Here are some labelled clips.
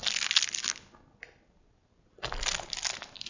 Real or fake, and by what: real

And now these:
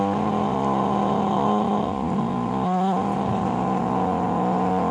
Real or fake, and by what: real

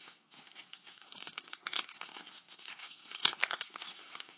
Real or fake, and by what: fake, codec, SNAC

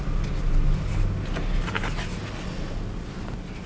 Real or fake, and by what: real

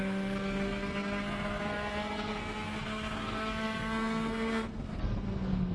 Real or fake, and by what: fake, codec, SNAC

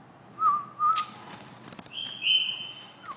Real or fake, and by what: real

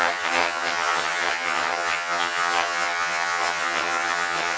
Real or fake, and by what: fake, vocoder, HiFi-GAN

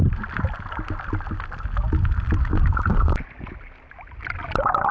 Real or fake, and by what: real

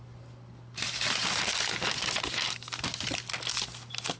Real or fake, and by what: real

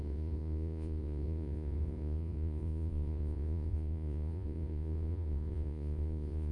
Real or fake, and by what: fake, vocoder, Vocos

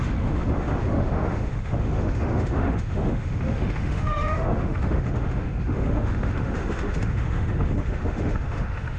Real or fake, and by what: fake, autoencoder, DAC-VAE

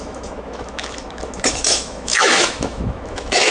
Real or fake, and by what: fake, autoencoder, DAC-VAE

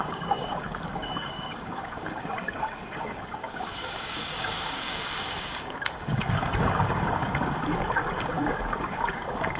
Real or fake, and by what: fake, codec, DAC